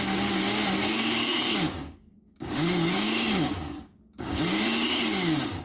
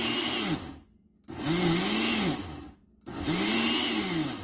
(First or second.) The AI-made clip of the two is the first